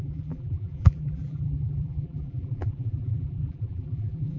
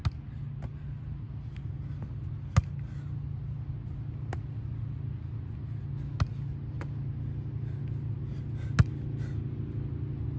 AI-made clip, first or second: first